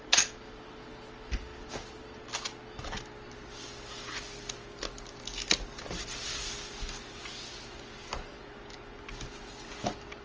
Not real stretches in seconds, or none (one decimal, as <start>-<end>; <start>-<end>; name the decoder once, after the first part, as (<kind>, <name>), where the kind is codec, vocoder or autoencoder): none